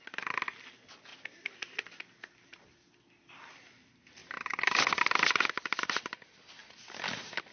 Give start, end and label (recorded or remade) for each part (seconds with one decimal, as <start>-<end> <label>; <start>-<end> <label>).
0.0-7.5 recorded